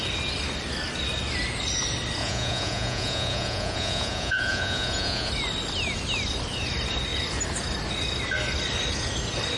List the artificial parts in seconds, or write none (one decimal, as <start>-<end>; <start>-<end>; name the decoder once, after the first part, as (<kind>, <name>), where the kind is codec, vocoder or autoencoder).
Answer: 2.2-5.3 (vocoder, Vocos)